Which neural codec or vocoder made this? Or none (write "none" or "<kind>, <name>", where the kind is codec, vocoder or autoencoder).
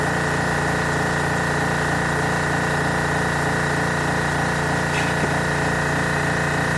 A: none